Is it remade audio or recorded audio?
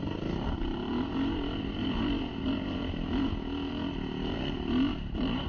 recorded